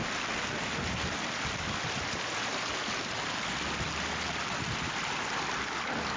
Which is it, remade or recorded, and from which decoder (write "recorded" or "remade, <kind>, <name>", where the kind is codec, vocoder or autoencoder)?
recorded